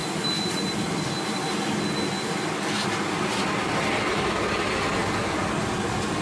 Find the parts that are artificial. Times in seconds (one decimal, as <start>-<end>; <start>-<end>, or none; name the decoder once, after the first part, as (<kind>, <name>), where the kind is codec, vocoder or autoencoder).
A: none